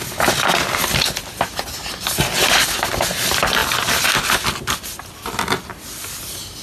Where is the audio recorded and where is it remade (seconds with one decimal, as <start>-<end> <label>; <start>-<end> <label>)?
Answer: 0.0-6.6 recorded